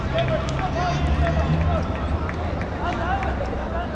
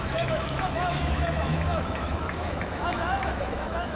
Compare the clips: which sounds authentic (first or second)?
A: first